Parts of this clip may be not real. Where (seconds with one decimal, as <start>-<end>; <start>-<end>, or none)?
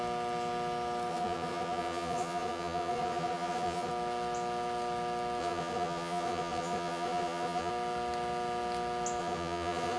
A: 1.1-3.9; 5.4-7.7; 9.2-10.0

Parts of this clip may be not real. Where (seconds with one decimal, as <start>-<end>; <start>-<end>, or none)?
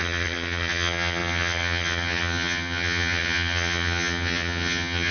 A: 0.0-5.1